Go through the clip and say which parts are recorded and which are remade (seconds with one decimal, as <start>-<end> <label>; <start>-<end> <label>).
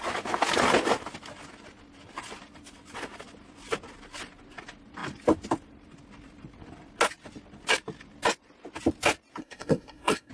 0.0-9.4 recorded; 9.4-10.3 remade